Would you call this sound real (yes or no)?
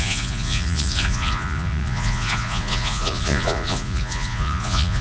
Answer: no